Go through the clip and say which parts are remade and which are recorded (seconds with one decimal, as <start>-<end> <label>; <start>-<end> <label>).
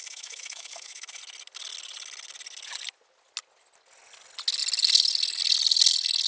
0.0-1.2 remade; 1.2-6.3 recorded